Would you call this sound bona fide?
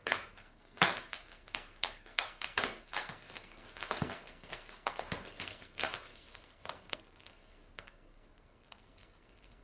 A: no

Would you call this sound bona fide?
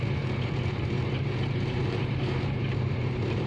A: no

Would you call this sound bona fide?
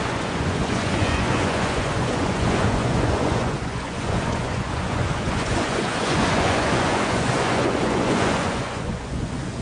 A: no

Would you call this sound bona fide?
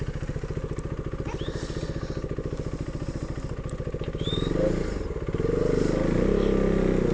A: yes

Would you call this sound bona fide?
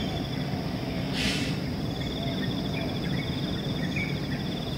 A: no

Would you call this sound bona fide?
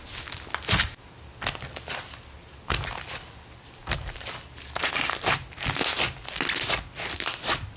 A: yes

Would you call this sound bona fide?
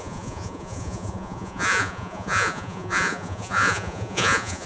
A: no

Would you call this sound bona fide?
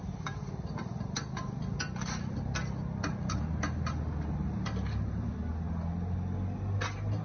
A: yes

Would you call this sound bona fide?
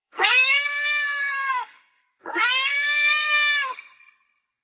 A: no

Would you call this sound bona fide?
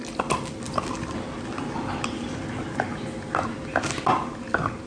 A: yes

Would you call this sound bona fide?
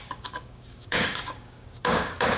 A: no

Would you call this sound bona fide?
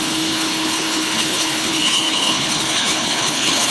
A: no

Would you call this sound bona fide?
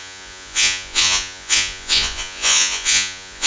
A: no